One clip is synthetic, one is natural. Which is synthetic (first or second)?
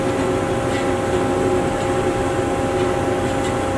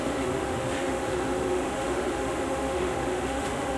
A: second